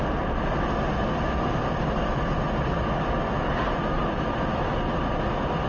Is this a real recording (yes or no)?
yes